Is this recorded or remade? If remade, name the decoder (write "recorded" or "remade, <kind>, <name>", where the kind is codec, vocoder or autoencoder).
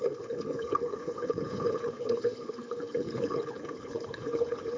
remade, codec, HILCodec